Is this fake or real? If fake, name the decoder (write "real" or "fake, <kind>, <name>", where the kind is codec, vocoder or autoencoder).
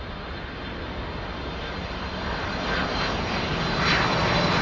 real